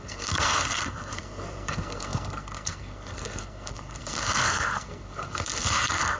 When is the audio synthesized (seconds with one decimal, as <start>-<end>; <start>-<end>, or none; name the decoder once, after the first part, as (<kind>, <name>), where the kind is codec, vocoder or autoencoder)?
0.0-6.2 (codec, SNAC)